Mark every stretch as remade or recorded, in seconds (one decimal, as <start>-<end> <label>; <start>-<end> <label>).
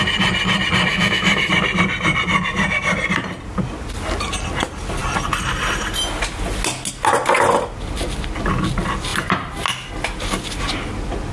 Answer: 0.0-0.9 recorded; 0.9-1.5 remade; 1.5-11.3 recorded